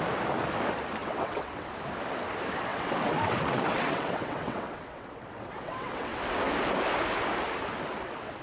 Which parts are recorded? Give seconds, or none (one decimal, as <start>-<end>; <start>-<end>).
0.0-1.0; 1.7-2.7; 6.2-8.4